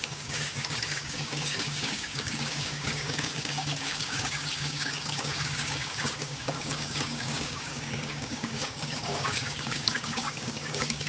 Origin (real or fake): fake